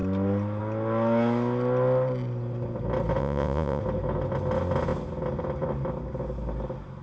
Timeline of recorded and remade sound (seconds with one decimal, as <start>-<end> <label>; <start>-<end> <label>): 0.0-3.2 recorded; 3.2-3.8 remade; 3.8-7.0 recorded